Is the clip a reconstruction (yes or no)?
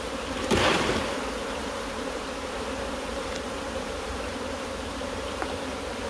yes